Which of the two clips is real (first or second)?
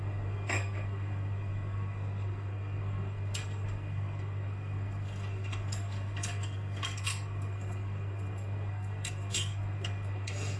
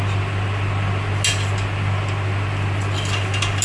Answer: second